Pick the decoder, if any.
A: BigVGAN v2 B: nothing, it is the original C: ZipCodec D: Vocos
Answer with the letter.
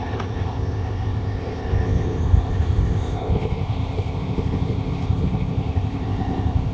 C